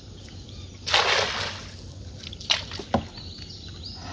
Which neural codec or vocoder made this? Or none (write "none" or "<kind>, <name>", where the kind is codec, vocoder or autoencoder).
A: none